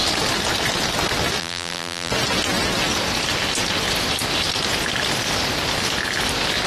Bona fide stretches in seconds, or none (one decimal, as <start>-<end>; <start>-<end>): 0.0-1.4; 2.1-6.7